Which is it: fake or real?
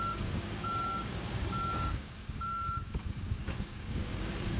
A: fake